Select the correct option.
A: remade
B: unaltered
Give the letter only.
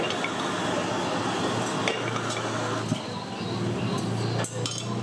B